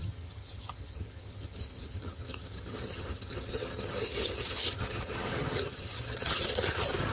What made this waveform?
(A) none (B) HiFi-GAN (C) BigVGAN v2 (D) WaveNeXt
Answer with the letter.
B